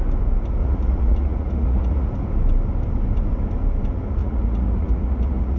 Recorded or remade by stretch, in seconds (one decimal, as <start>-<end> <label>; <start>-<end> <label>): 0.0-0.6 recorded; 0.6-2.1 remade; 2.1-4.2 recorded; 4.2-5.6 remade